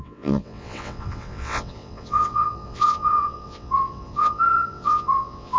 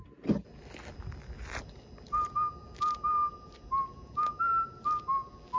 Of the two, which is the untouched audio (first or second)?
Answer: second